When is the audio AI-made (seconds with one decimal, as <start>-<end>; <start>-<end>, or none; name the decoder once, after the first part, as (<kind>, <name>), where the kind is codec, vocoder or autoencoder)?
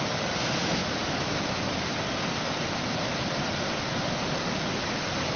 none